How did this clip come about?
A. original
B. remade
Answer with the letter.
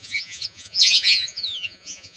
B